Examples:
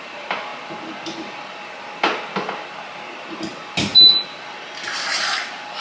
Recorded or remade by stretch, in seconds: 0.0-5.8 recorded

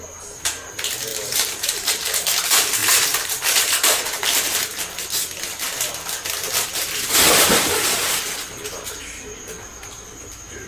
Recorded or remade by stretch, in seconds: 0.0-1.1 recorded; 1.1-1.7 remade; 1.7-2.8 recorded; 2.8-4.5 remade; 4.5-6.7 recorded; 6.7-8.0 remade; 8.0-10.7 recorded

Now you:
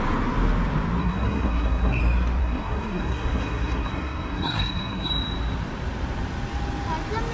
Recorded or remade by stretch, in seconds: 0.0-1.0 recorded; 1.0-2.0 remade; 2.0-2.4 recorded; 2.4-5.1 remade; 5.1-7.3 recorded